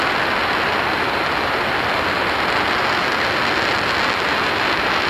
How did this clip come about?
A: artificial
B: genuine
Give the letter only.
B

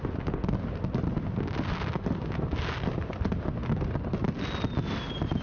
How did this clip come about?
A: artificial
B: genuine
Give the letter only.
B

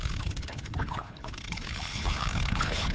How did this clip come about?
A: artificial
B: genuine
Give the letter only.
A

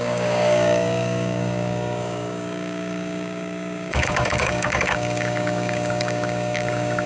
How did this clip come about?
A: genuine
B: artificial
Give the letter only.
B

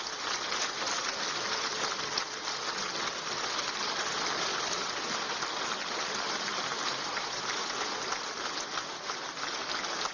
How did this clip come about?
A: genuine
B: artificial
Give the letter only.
A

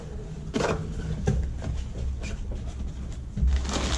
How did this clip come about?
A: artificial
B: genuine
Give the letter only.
B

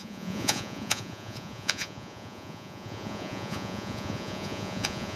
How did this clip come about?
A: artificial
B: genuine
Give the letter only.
A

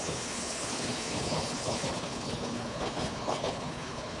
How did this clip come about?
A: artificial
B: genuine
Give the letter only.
A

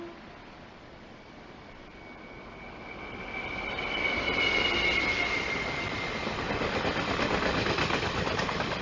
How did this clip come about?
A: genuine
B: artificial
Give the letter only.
A